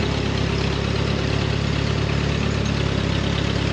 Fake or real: fake